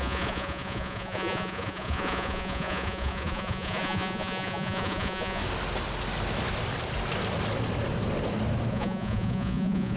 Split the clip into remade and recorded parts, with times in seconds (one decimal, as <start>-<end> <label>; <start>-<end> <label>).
0.0-5.4 remade; 5.4-8.7 recorded; 8.7-10.0 remade